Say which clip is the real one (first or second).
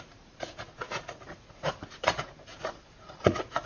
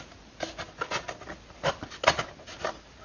second